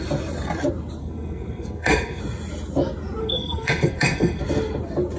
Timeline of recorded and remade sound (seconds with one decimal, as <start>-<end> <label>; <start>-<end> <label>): 0.0-1.0 recorded; 1.0-2.2 remade; 2.2-3.2 recorded; 3.2-4.4 remade; 4.4-5.2 recorded